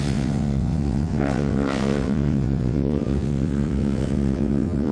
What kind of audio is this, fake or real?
fake